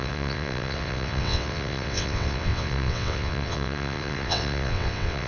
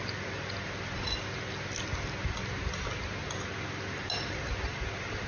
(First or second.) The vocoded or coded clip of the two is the first